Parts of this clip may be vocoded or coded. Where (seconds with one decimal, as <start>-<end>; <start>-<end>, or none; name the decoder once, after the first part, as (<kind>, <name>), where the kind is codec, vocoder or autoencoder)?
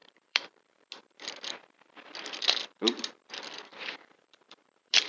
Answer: 0.0-0.9 (vocoder, BigVGAN v2); 3.7-5.1